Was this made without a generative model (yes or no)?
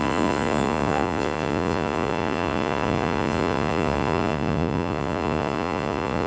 no